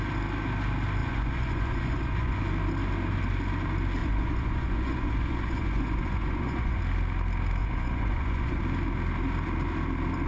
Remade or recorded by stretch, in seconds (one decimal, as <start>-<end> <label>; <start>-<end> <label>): 0.0-1.0 recorded; 1.0-2.4 remade; 2.4-4.0 recorded; 4.0-6.8 remade; 6.8-7.6 recorded; 7.6-8.6 remade; 8.6-10.3 recorded